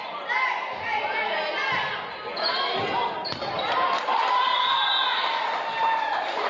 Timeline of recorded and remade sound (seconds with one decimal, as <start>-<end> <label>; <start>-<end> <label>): 0.0-6.5 recorded